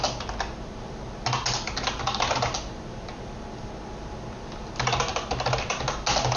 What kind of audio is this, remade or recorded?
recorded